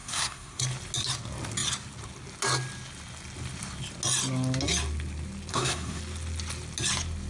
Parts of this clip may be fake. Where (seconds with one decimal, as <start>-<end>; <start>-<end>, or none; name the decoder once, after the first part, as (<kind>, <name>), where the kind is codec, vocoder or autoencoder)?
0.0-0.6 (codec, SNAC); 5.5-6.0